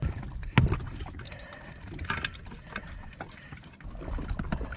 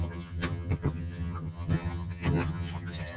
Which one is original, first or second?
first